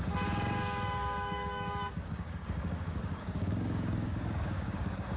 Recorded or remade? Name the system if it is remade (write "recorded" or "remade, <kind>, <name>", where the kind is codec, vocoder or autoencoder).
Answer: remade, codec, DAC